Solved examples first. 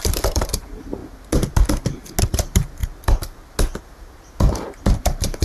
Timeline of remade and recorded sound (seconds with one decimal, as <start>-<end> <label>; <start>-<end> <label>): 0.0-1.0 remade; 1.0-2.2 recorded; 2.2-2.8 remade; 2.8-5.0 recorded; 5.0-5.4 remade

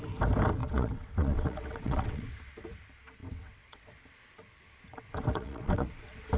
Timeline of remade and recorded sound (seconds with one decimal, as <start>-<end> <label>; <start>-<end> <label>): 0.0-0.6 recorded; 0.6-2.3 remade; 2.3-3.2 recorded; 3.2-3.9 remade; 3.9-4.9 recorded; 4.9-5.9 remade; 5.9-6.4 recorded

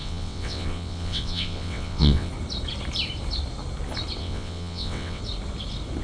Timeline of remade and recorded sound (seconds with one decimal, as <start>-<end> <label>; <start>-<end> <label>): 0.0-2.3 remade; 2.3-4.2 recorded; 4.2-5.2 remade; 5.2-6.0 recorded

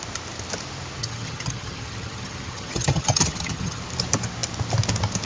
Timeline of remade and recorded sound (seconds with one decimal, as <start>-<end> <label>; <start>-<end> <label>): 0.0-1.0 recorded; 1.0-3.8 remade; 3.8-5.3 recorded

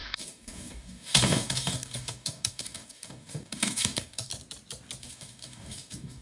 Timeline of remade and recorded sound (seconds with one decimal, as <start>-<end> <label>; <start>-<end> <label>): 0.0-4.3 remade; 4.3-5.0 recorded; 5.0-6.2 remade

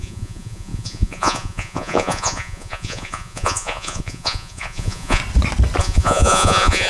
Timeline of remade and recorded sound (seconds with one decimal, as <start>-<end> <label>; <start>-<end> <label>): 0.0-5.2 remade; 5.2-5.8 recorded; 5.8-6.9 remade

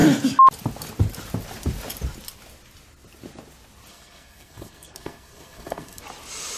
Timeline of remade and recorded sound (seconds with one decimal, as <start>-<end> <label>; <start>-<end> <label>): 0.0-3.9 recorded; 3.9-6.0 remade; 6.0-6.6 recorded

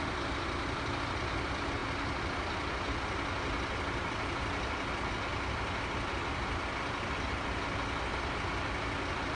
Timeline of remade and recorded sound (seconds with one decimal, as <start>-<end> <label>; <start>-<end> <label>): 0.0-9.3 recorded